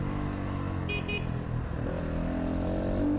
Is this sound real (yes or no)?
yes